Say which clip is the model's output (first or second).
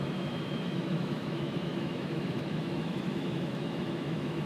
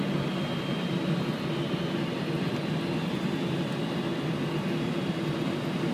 first